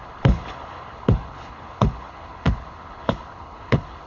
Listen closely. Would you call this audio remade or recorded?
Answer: remade